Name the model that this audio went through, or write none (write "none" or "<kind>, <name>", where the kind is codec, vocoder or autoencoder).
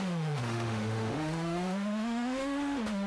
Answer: autoencoder, DAC-VAE